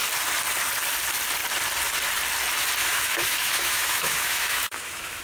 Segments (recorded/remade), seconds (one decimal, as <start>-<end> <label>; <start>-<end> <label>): 0.0-2.8 recorded; 2.8-5.2 remade